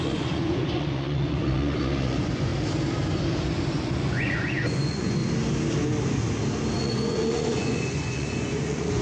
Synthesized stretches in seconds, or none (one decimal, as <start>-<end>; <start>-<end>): 0.0-2.5; 3.7-5.2; 6.8-9.0